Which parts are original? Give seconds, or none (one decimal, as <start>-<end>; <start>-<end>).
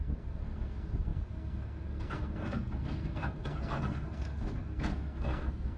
none